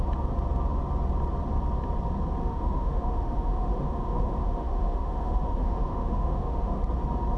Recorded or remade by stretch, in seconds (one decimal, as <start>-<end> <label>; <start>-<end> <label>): 0.0-2.4 recorded; 2.4-6.8 remade; 6.8-7.4 recorded